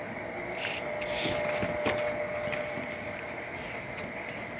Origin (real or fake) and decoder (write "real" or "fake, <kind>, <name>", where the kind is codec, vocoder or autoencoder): real